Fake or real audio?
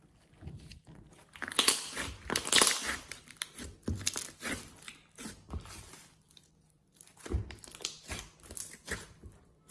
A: real